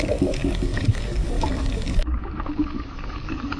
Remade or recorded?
remade